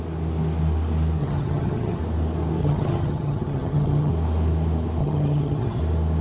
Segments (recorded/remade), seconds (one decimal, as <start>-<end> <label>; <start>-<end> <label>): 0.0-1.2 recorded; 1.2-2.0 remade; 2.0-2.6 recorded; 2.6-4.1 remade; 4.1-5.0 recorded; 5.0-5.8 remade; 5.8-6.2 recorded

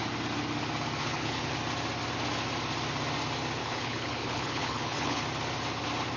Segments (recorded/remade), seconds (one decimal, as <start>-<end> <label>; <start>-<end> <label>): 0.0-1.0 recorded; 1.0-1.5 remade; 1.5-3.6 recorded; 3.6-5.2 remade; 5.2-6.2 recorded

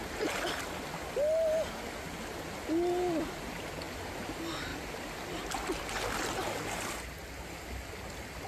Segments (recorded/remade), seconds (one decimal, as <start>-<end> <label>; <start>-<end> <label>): 0.0-8.5 recorded

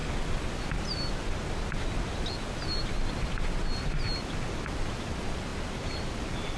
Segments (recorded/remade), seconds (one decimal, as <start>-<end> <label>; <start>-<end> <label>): 0.0-6.6 recorded

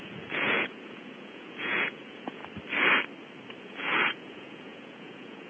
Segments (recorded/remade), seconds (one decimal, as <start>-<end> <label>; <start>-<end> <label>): 0.0-2.4 remade; 2.4-3.6 recorded; 3.6-5.5 remade

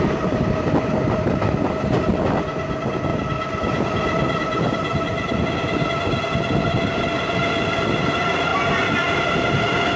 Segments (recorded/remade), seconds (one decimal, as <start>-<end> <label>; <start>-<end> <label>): 0.0-3.1 recorded; 3.1-5.4 remade; 5.4-10.0 recorded

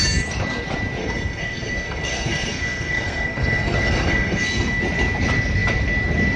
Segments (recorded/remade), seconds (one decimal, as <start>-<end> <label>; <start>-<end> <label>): 0.0-1.0 recorded; 1.0-4.8 remade; 4.8-6.4 recorded